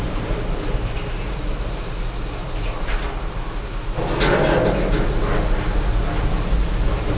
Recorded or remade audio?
recorded